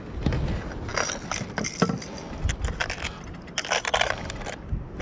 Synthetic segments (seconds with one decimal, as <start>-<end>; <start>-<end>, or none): none